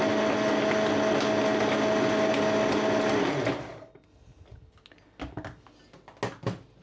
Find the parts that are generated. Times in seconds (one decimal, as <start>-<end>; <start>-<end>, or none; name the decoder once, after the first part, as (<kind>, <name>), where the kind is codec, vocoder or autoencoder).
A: none